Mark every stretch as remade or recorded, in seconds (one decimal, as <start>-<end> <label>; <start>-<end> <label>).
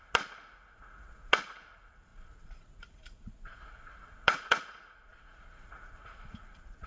0.0-6.9 remade